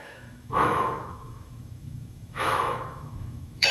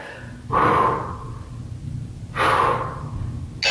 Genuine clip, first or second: second